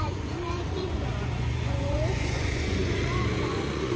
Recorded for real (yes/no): no